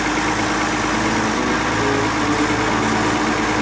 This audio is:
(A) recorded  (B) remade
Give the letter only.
A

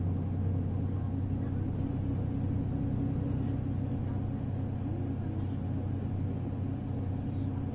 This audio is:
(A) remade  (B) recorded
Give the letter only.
B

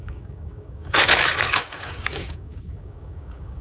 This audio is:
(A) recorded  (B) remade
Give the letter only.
B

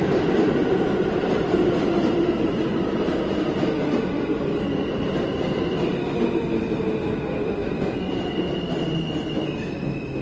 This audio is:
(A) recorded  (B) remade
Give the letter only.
A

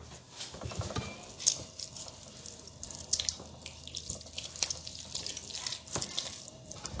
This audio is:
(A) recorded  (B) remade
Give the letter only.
A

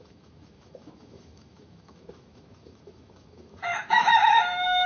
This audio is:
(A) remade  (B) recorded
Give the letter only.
A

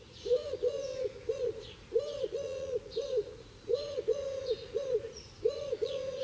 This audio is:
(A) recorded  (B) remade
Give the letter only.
B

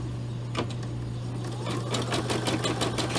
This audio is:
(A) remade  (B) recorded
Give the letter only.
B